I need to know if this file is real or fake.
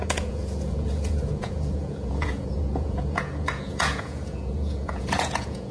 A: fake